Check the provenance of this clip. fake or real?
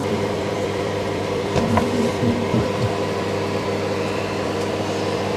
fake